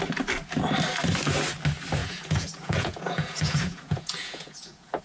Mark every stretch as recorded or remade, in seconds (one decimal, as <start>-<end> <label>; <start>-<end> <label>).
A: 0.0-2.0 recorded; 2.0-5.0 remade